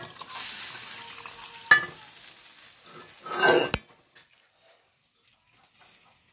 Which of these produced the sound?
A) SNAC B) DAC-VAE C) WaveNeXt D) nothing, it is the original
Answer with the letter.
D